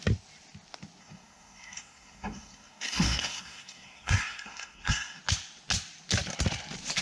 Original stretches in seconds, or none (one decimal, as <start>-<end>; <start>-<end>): 0.0-1.0; 5.2-7.0

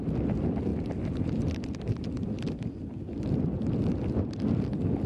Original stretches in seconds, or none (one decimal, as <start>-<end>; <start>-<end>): 0.0-5.1

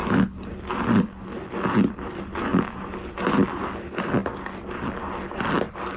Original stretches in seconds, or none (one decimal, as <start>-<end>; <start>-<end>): 0.0-6.0

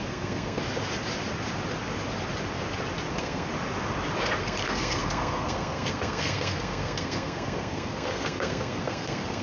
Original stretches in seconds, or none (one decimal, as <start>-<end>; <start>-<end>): 0.6-3.1; 3.5-4.4